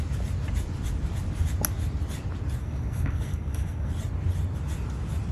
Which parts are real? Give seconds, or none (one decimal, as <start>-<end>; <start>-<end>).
0.0-2.6; 3.9-5.3